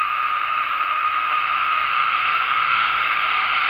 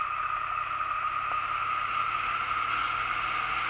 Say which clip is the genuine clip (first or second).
second